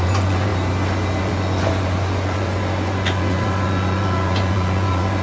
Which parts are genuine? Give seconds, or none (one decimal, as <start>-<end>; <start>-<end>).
0.5-1.2